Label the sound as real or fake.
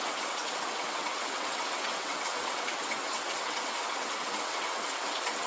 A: fake